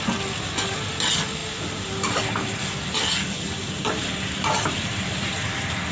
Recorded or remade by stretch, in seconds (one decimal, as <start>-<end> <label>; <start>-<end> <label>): 0.0-3.6 recorded; 3.6-5.3 remade; 5.3-5.9 recorded